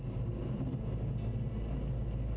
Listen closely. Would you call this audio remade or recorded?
recorded